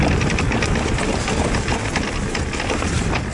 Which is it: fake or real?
real